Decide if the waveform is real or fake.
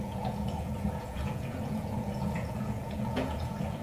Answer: fake